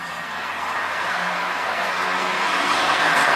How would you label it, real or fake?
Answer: fake